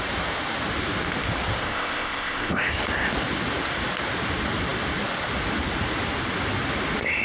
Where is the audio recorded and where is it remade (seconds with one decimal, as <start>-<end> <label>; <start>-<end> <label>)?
0.0-1.6 recorded; 1.6-2.7 remade; 2.7-7.2 recorded